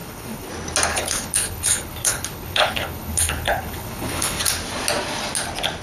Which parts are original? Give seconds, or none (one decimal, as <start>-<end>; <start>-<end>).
0.5-0.9; 4.4-5.8